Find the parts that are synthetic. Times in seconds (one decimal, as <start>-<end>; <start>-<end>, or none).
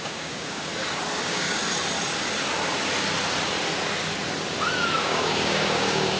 0.0-0.7; 1.2-1.6; 5.0-6.2